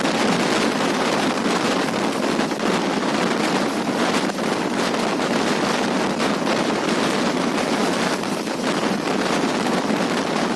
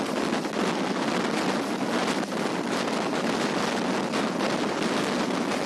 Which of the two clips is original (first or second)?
second